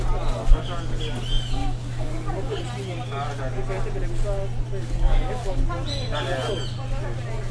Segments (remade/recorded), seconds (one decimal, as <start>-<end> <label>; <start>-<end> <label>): 0.0-1.6 recorded; 1.6-2.6 remade; 2.6-4.8 recorded; 4.8-5.6 remade; 5.6-7.5 recorded